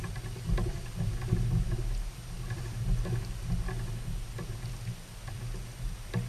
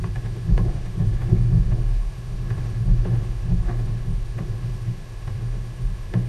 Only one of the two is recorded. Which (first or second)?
first